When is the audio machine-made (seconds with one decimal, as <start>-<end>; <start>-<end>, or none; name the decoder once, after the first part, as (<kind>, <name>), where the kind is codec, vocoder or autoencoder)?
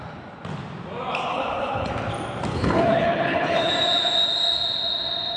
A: 1.3-1.9 (codec, HILCodec); 2.5-3.7